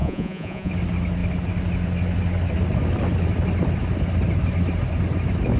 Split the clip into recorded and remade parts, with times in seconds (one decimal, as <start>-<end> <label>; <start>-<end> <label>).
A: 0.0-0.7 remade; 0.7-5.6 recorded

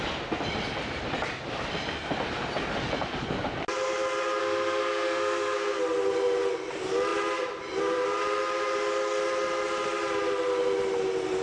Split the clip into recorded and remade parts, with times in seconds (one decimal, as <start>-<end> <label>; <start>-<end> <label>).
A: 0.0-4.4 recorded; 4.4-5.8 remade; 5.8-11.4 recorded

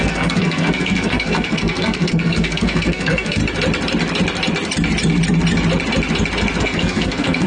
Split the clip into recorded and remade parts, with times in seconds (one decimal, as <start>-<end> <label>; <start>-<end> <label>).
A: 0.0-3.4 remade; 3.4-6.6 recorded; 6.6-7.5 remade